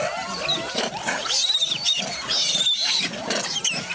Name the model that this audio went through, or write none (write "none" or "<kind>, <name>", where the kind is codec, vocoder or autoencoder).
none